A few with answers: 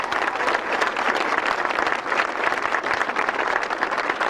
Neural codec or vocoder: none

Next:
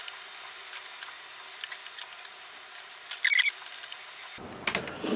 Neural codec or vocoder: none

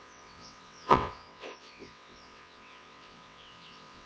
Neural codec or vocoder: vocoder, WaveNeXt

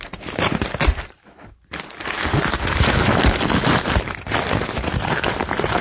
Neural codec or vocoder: vocoder, BigVGAN v2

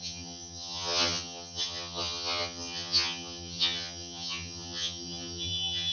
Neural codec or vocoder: vocoder, HiFi-GAN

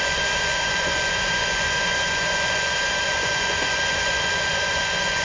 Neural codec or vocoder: vocoder, Vocos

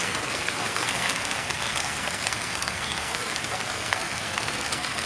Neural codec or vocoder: codec, SNAC